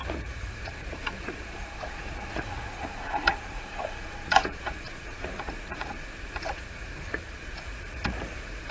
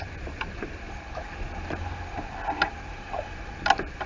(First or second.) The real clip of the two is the second